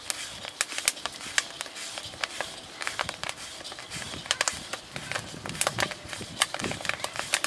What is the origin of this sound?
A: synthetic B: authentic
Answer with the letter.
B